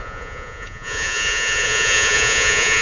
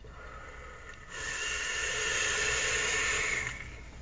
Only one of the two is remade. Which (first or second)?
first